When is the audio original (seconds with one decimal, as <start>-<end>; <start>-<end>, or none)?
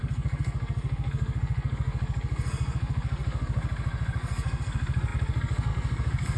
none